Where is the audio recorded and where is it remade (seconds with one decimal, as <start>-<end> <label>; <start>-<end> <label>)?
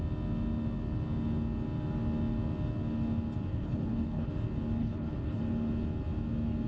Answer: 0.0-3.5 recorded; 3.5-4.3 remade; 4.3-4.8 recorded; 4.8-5.4 remade; 5.4-6.7 recorded